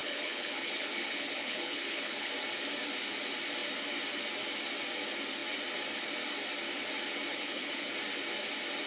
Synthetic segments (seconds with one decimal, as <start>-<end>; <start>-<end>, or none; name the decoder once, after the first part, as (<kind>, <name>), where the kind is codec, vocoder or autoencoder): 0.0-2.3 (codec, HILCodec); 7.3-7.9

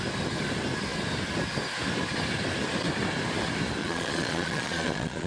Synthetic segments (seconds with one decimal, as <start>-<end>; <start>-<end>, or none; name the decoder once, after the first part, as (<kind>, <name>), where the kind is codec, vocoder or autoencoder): 3.8-5.3 (vocoder, Vocos)

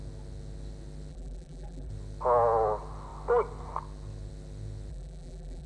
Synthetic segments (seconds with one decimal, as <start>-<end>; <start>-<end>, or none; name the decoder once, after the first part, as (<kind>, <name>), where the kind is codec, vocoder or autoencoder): 1.1-1.9 (vocoder, BigVGAN v2); 4.9-5.7

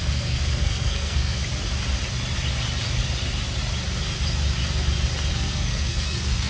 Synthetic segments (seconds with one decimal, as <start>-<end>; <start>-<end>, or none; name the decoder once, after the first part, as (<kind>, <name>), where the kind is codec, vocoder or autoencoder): 0.0-1.4 (codec, SNAC); 5.3-6.5

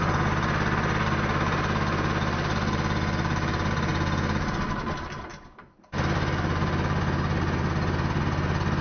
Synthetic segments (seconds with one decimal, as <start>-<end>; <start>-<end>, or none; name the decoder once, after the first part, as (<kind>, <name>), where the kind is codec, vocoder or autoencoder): none

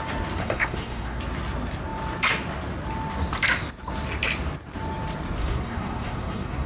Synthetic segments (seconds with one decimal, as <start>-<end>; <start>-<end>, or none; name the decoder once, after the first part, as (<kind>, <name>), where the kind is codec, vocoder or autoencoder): 0.4-1.2 (codec, SNAC); 5.4-6.7